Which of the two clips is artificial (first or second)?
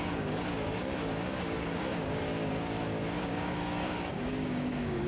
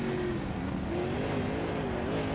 first